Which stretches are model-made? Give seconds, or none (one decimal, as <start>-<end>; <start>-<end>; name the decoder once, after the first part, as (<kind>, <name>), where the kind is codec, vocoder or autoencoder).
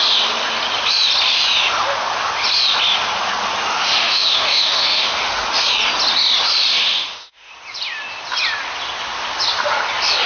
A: 3.7-5.4 (autoencoder, DAC-VAE); 6.7-7.5